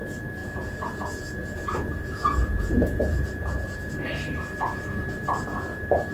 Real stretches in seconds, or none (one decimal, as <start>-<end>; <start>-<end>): 0.0-0.4; 3.9-6.1